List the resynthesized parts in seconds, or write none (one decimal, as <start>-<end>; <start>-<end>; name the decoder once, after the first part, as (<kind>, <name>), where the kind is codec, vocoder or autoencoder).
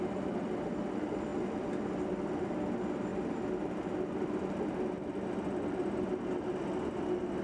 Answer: 1.3-2.5 (vocoder, BigVGAN v2)